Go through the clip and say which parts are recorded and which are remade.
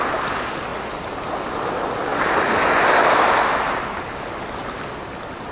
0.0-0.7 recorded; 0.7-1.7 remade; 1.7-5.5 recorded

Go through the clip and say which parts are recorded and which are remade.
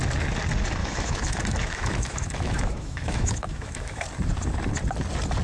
0.0-0.8 recorded; 0.8-4.0 remade; 4.0-5.4 recorded